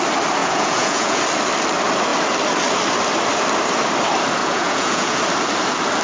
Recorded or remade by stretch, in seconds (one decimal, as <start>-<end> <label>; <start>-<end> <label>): 0.0-0.4 recorded; 0.4-1.2 remade; 1.2-4.4 recorded; 4.4-5.2 remade; 5.2-6.0 recorded